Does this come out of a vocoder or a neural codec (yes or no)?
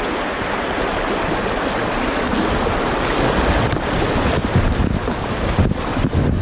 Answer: no